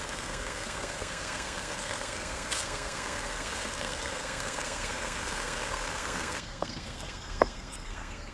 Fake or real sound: fake